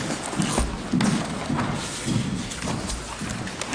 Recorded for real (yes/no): yes